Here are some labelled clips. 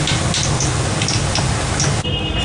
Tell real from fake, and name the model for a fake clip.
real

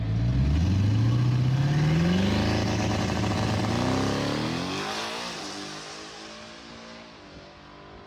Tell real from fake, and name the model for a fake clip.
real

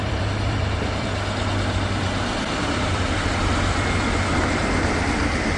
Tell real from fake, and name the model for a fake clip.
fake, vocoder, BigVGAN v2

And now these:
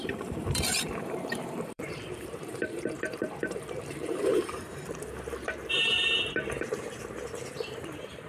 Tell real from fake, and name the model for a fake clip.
fake, vocoder, BigVGAN v2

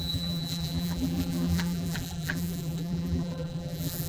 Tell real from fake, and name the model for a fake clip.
fake, vocoder, BigVGAN v2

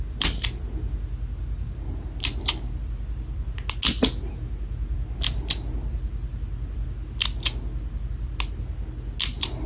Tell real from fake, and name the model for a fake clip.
real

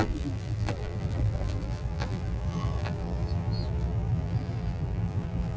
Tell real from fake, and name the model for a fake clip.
fake, vocoder, BigVGAN v2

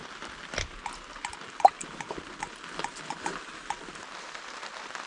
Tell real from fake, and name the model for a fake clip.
real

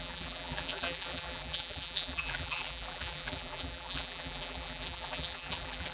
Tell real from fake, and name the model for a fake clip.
fake, vocoder, BigVGAN v2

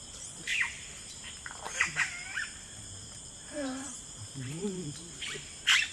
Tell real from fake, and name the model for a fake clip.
fake, vocoder, BigVGAN v2